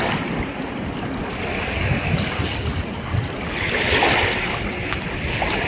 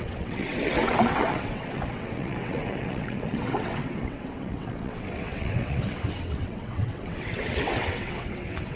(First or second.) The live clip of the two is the first